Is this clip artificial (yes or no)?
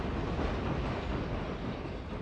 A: no